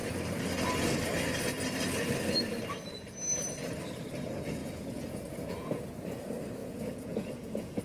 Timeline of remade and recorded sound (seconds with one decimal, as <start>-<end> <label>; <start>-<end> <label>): 0.0-4.6 recorded; 4.6-5.9 remade; 5.9-6.6 recorded; 6.6-7.8 remade